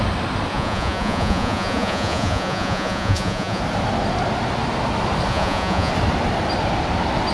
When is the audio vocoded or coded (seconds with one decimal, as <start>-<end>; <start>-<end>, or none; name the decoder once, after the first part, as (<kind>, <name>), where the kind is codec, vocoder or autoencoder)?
0.5-3.6 (vocoder, Vocos); 5.3-5.9